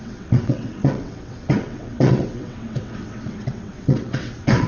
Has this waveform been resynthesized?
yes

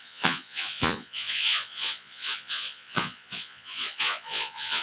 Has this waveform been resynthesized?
yes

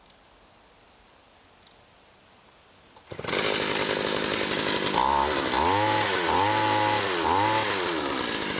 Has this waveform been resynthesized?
no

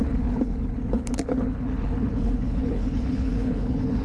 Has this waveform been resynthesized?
yes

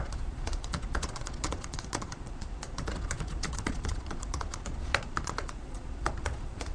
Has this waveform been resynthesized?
yes